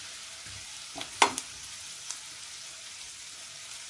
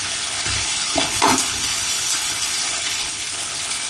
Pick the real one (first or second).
first